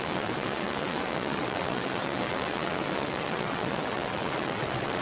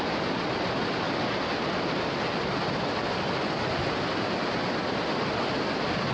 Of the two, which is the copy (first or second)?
first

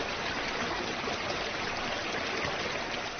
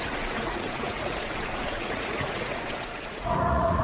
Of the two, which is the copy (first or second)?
second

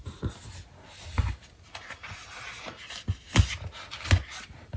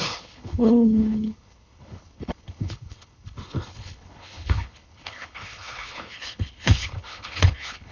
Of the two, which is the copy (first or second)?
second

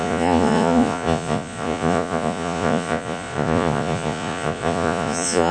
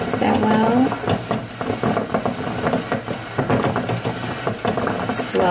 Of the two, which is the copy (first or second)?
first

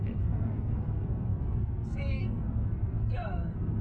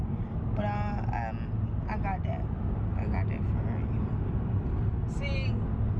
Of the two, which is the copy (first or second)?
first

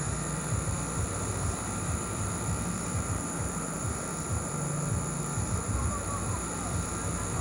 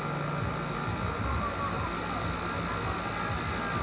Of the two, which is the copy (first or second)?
first